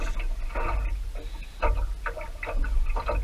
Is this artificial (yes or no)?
no